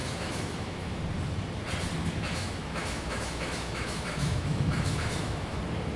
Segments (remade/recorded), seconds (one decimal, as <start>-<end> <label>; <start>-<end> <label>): 0.0-1.0 remade; 1.0-2.0 recorded; 2.0-5.6 remade; 5.6-6.0 recorded